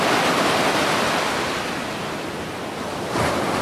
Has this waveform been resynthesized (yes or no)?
no